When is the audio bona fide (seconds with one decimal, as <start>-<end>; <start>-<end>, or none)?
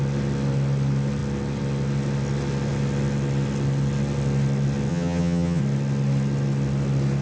0.0-4.9; 5.6-7.2